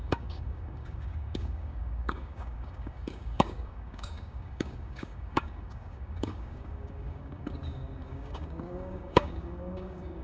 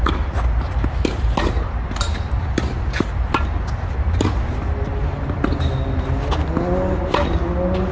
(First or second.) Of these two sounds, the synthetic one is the first